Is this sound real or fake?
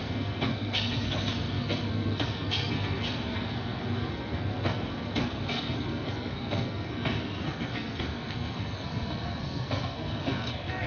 fake